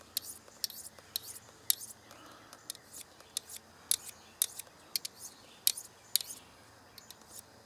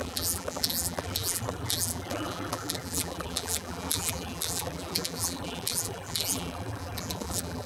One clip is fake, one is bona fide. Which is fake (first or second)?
second